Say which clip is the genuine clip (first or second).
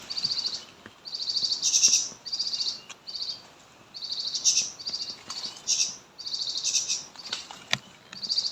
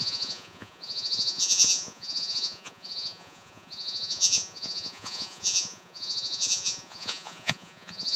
first